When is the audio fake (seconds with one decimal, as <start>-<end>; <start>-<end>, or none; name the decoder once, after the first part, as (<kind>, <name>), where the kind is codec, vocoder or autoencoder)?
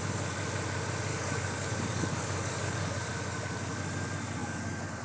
1.1-3.1 (codec, DAC); 4.4-5.0